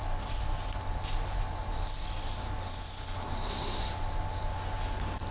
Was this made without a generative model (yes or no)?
yes